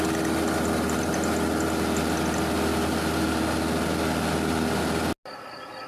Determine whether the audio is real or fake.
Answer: real